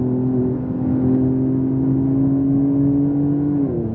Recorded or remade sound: recorded